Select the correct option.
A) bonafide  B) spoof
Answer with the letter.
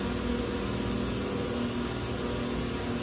A